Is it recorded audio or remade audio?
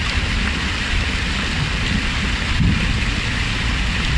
recorded